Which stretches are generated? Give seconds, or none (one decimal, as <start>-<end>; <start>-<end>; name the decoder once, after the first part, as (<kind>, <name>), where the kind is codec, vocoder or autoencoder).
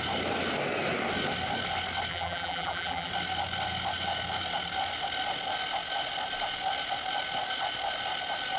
2.1-3.1 (vocoder, BigVGAN v2)